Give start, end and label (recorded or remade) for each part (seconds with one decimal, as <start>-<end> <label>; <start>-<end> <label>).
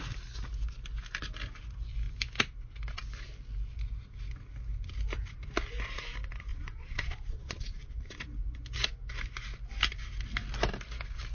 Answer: 0.0-6.5 recorded; 6.5-7.9 remade; 7.9-11.3 recorded